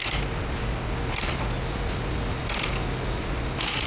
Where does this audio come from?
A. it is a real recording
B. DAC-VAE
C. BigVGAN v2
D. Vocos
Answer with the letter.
A